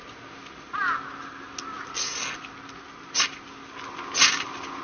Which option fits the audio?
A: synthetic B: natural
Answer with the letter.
B